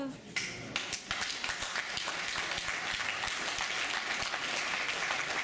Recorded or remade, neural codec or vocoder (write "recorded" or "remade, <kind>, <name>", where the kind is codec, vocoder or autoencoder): recorded